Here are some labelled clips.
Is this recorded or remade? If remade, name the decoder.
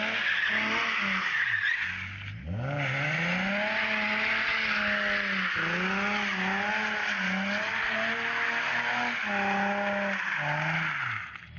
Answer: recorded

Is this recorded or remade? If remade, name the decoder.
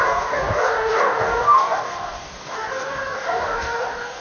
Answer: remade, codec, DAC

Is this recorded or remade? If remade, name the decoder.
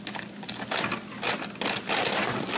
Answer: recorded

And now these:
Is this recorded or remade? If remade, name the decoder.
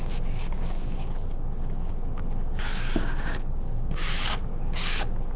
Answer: remade, codec, DAC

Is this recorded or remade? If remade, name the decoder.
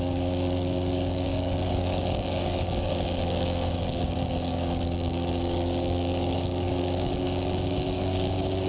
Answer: remade, codec, DAC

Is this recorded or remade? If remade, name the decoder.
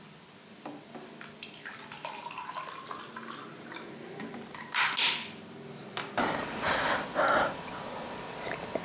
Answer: recorded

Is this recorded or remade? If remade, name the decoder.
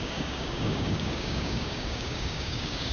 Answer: remade, codec, DAC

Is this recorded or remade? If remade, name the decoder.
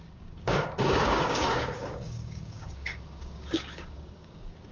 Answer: remade, codec, DAC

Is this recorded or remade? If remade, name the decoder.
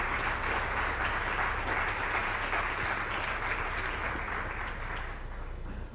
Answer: recorded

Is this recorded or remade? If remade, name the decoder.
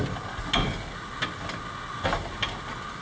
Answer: recorded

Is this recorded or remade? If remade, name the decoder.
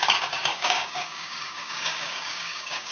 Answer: remade, codec, DAC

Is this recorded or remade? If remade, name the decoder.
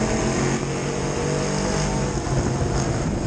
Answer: recorded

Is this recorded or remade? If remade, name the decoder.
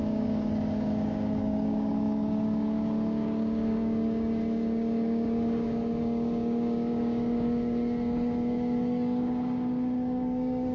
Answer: remade, codec, DAC